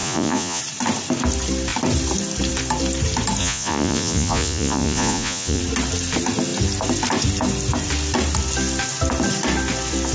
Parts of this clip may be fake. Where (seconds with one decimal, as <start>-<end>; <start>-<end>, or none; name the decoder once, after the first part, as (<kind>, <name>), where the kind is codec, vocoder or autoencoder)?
0.0-0.6 (vocoder, Vocos); 3.4-5.6